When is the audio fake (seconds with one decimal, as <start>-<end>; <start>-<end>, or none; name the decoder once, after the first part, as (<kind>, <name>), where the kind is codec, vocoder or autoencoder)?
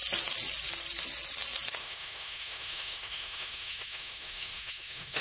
1.8-5.2 (autoencoder, DAC-VAE)